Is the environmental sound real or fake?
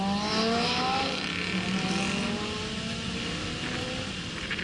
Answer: real